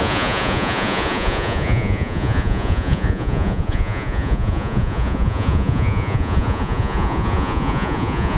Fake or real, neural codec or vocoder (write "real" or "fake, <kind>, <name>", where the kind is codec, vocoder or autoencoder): fake, vocoder, Vocos